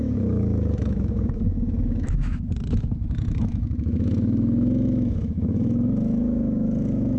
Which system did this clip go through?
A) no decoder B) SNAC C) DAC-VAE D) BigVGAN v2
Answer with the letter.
C